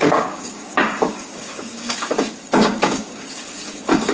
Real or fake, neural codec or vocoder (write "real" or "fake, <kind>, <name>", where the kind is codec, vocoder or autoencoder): fake, codec, DAC